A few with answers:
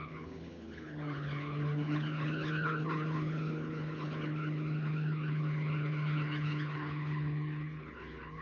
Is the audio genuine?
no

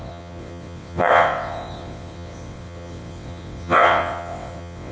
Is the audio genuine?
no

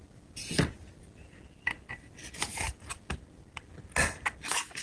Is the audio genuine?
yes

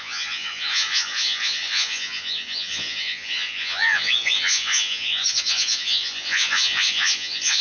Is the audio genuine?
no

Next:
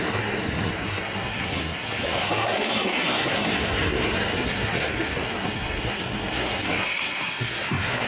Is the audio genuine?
no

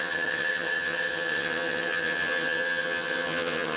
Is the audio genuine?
no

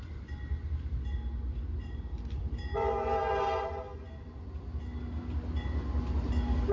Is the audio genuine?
yes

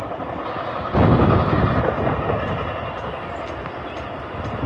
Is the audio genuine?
yes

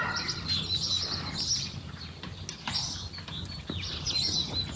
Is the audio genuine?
yes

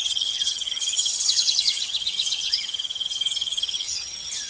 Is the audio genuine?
no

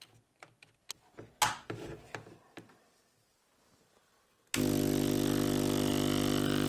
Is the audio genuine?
yes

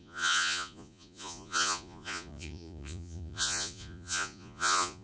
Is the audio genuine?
no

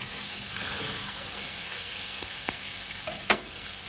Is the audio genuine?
no